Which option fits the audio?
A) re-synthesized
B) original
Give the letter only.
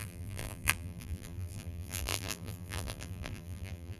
A